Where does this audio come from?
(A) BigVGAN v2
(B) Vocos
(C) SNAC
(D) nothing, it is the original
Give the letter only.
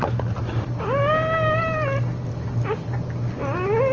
D